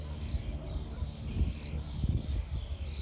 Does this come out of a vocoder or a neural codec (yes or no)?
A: no